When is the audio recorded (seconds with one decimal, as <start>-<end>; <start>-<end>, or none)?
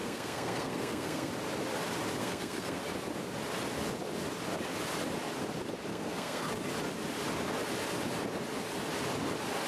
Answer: 1.3-2.2; 2.8-5.9; 6.5-9.7